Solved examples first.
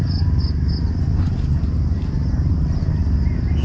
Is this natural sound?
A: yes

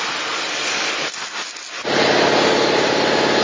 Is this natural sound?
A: yes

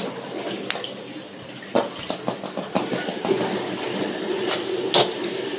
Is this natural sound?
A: yes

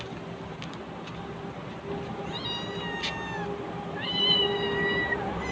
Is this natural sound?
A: yes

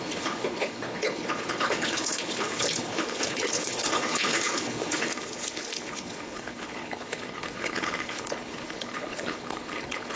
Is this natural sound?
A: no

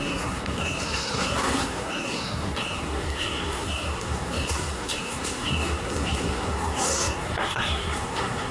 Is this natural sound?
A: no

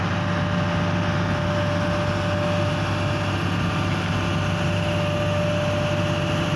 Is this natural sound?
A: yes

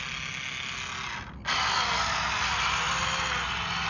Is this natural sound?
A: yes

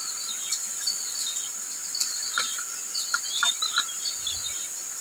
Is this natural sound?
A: yes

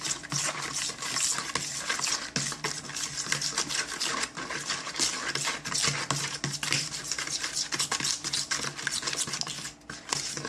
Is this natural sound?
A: yes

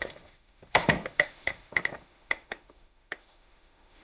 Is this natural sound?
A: no